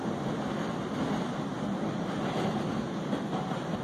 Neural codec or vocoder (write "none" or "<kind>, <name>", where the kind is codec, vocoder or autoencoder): none